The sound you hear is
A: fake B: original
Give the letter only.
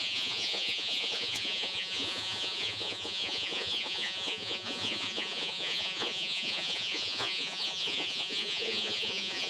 A